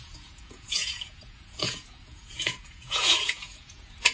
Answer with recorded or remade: remade